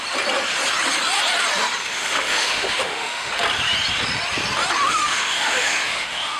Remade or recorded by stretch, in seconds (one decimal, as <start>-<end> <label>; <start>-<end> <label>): 0.0-1.8 recorded; 1.8-3.3 remade; 3.3-4.8 recorded; 4.8-6.4 remade